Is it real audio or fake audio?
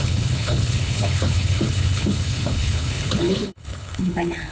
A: fake